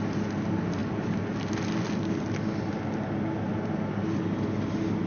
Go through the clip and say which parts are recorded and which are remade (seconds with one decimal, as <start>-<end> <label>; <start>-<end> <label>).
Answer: 0.0-5.1 recorded